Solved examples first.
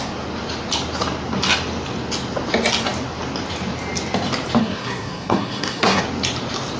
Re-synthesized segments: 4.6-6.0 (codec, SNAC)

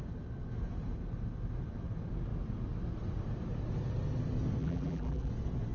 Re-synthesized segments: 4.6-5.3 (vocoder, BigVGAN v2)

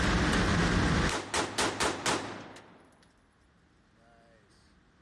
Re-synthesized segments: none